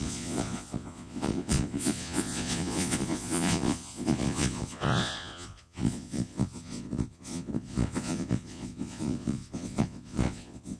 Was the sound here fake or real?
fake